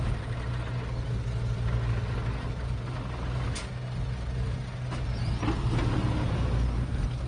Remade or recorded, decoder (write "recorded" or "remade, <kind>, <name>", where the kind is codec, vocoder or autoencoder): recorded